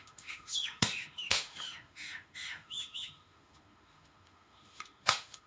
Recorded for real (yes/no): no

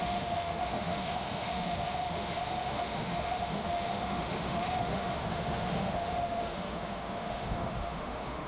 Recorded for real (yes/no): no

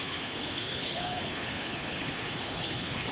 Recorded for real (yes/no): no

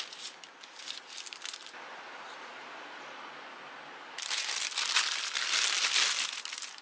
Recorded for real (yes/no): yes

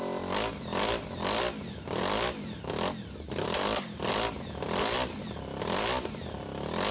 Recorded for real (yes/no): yes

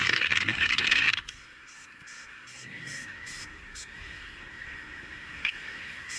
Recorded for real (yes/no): no